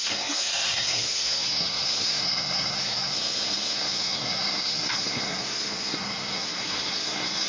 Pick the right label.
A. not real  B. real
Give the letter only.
A